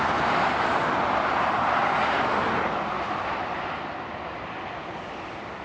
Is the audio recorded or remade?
remade